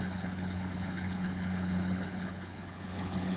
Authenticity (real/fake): fake